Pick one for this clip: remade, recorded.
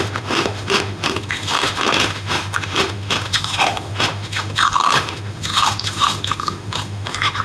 remade